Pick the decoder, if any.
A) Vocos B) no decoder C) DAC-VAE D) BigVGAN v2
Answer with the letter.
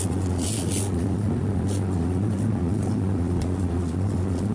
A